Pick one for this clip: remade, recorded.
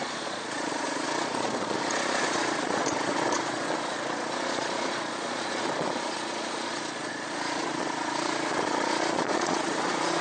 remade